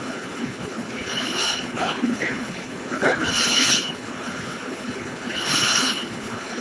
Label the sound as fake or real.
fake